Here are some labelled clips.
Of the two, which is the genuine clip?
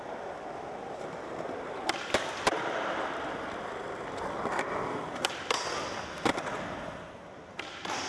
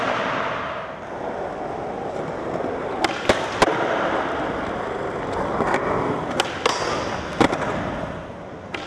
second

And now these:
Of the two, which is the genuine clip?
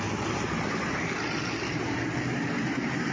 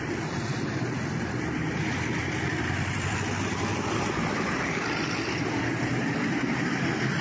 first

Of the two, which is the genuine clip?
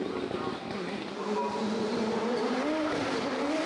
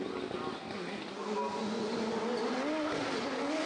second